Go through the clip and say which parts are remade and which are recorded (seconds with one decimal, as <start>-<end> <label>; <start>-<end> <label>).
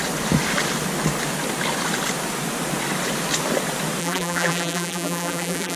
0.0-4.0 recorded; 4.0-5.8 remade